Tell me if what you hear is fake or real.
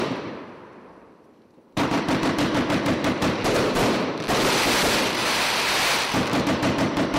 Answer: fake